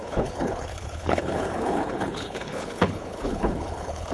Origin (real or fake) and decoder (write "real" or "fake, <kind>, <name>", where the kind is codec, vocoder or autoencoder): fake, codec, HILCodec